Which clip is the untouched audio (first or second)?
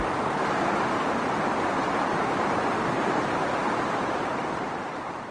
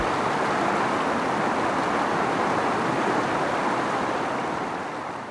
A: second